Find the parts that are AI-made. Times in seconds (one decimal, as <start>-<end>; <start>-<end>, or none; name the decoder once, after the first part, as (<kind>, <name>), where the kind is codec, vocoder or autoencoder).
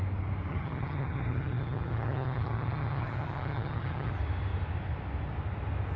0.5-4.1 (vocoder, HiFi-GAN)